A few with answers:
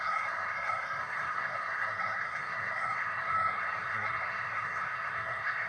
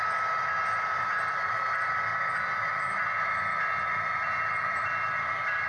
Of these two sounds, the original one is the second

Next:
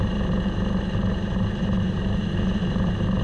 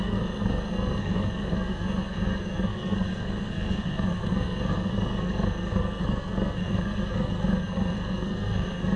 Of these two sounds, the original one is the first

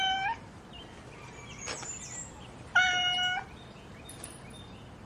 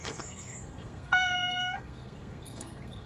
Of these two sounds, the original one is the first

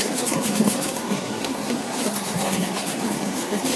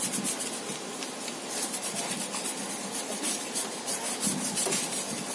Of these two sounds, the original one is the second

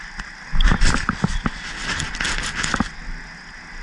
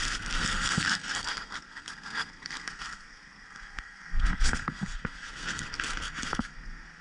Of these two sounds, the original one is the first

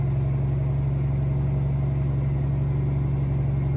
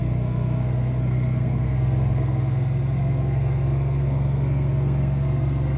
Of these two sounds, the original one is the first